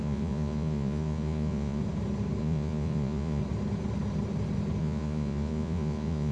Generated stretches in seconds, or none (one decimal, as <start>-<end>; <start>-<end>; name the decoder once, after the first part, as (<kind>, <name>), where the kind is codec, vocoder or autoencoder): 0.0-1.8 (vocoder, Vocos); 2.4-3.4; 4.8-6.3

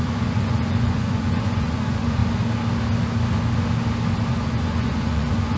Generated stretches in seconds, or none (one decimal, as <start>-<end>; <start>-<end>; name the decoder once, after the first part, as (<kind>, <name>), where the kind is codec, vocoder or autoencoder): 0.0-2.2 (vocoder, Vocos); 4.3-5.6

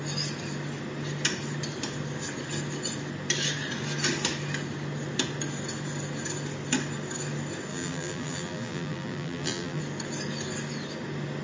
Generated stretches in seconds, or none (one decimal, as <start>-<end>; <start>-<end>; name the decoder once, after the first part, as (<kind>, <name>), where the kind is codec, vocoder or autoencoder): 7.7-9.8 (vocoder, BigVGAN v2)

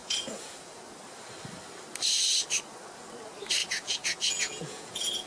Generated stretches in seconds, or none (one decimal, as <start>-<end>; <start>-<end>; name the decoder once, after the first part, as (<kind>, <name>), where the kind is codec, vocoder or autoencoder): 0.0-0.8 (vocoder, Vocos); 3.6-5.3

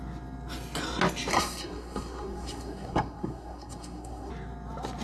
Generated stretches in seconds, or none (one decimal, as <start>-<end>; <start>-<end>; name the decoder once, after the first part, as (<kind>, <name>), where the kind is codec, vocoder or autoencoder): 1.3-4.3 (codec, SNAC)

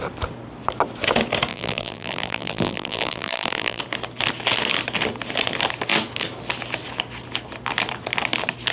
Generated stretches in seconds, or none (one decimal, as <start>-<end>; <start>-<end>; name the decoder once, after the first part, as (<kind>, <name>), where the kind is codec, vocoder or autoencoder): 1.5-3.8 (vocoder, BigVGAN v2)

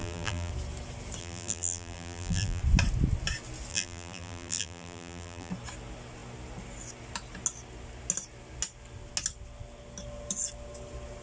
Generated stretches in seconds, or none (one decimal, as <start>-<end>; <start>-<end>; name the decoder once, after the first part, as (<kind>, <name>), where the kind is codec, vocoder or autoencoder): 0.0-0.5 (vocoder, BigVGAN v2); 1.2-2.6; 3.7-5.5